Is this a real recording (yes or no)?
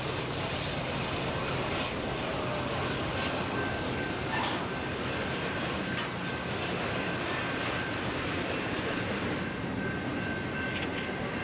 yes